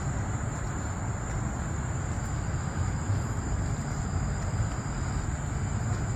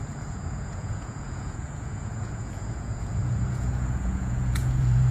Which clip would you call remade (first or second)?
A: second